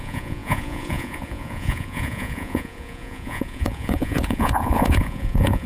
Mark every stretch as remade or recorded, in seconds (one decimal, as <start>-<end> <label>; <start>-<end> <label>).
0.0-5.7 remade